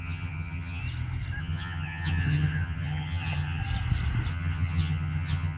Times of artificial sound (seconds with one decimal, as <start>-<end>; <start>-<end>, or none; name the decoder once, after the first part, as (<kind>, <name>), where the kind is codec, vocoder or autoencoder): 0.0-0.8 (vocoder, HiFi-GAN); 1.4-3.6; 4.3-5.6